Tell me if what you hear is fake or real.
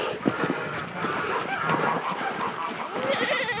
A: real